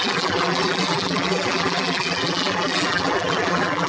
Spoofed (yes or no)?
yes